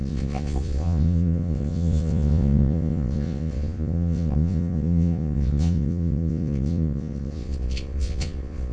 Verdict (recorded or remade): remade